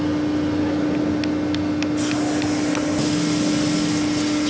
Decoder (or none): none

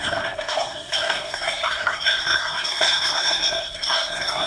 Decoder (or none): codec, SNAC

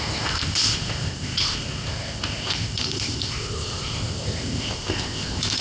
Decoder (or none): codec, ZipCodec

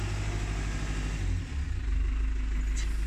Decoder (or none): none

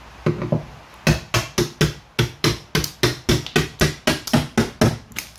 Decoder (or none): none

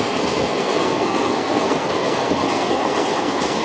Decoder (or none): codec, SNAC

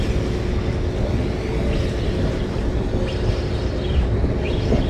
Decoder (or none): none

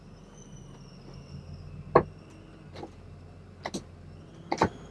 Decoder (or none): none